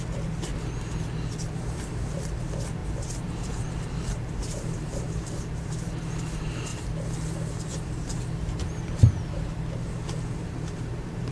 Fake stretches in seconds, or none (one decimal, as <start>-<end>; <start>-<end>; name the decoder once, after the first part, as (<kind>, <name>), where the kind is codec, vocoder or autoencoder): 0.0-0.5 (vocoder, BigVGAN v2); 1.5-6.7; 7.7-11.3